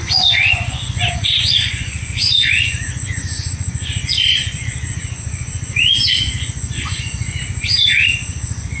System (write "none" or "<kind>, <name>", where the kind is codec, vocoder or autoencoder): vocoder, Vocos